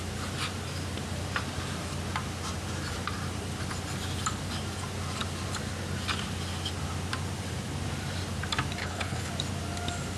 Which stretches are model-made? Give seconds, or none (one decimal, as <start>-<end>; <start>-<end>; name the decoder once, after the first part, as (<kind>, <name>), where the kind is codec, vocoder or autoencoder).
8.8-9.3 (codec, HILCodec)